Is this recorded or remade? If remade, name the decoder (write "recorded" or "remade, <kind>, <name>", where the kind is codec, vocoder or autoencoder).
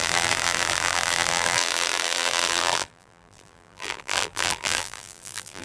remade, vocoder, BigVGAN v2